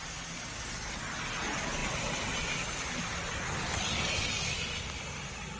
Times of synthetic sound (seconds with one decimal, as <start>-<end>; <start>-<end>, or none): none